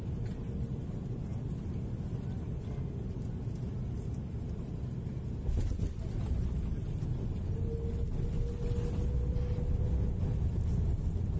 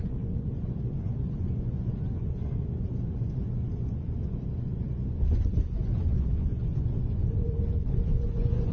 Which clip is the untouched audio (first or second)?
first